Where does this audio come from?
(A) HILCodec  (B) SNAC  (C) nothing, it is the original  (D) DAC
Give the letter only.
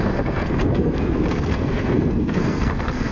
B